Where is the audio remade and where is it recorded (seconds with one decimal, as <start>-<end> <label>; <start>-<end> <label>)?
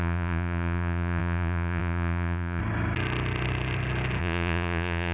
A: 0.0-2.6 remade; 2.6-4.2 recorded; 4.2-5.1 remade